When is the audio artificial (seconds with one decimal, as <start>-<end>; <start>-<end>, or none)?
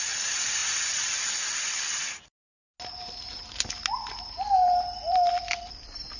0.0-0.6; 4.1-6.2